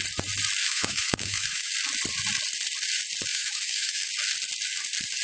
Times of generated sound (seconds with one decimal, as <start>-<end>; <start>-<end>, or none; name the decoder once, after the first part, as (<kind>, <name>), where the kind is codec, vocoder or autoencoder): 0.6-1.7 (autoencoder, DAC-VAE); 3.3-4.1